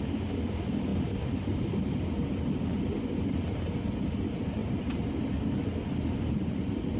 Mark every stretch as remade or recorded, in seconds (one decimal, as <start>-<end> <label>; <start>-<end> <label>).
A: 0.0-7.0 recorded